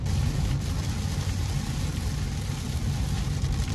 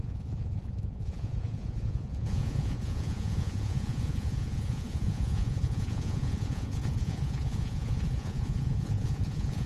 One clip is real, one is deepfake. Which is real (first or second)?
first